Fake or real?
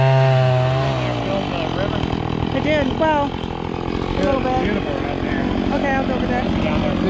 real